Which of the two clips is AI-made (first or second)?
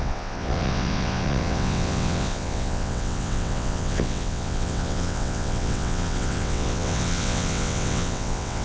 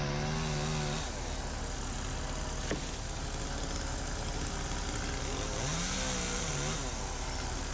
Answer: first